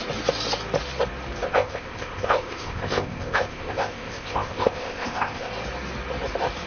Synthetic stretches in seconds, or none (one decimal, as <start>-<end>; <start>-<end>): 1.5-5.5